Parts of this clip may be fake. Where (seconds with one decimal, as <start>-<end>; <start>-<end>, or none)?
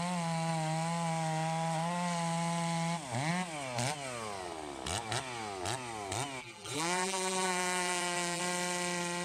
6.4-8.4